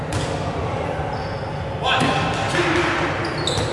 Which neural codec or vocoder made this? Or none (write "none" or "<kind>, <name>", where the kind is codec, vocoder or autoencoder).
none